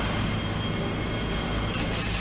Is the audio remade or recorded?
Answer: recorded